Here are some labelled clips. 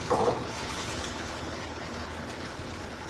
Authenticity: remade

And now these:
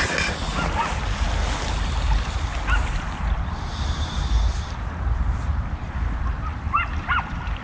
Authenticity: recorded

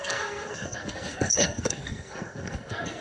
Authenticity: remade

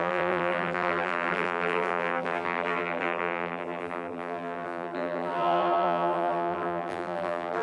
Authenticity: remade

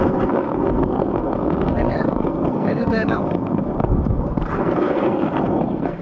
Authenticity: remade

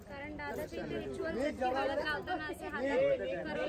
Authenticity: recorded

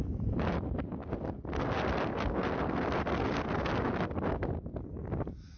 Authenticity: recorded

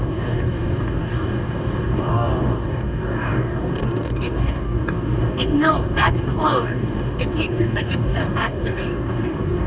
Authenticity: remade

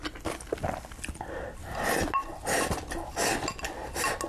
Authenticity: recorded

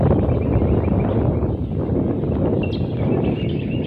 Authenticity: recorded